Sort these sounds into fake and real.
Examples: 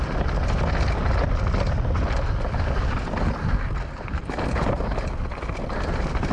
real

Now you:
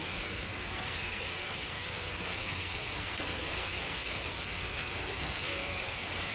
fake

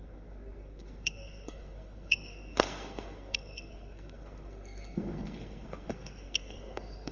fake